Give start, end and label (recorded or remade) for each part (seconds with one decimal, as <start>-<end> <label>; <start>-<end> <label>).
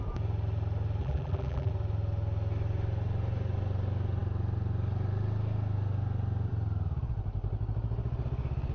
0.0-1.0 recorded; 1.0-1.7 remade; 1.7-8.7 recorded